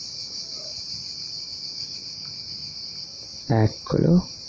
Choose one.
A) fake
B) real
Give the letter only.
B